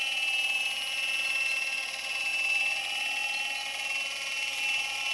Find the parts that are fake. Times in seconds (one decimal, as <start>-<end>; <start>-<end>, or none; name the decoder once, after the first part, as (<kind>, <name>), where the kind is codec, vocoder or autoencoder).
none